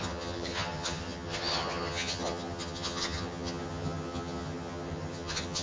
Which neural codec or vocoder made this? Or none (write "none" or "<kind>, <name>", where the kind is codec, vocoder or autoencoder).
vocoder, HiFi-GAN